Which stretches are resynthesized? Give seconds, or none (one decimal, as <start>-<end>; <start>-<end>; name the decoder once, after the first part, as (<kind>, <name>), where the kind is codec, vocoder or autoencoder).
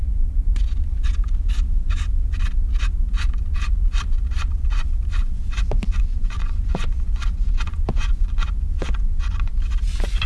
5.2-9.5 (vocoder, Vocos)